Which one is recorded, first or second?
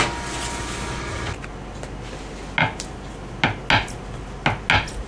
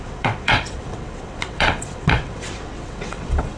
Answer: first